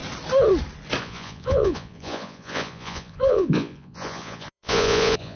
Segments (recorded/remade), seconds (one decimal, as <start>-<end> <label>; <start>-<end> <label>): 0.0-1.0 recorded; 1.0-5.4 remade